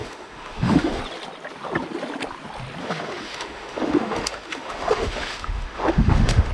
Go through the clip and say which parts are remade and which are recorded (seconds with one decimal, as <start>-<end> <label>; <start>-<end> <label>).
0.0-1.0 remade; 1.0-2.8 recorded; 2.8-6.5 remade